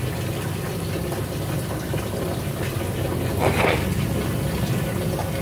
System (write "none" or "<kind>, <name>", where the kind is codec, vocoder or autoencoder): none